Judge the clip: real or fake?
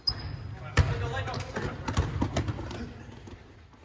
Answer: real